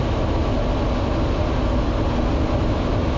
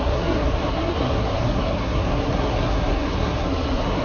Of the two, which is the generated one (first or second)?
second